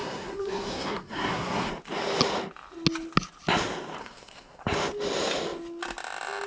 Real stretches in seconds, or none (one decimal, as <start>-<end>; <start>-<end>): 1.7-4.0; 4.6-6.5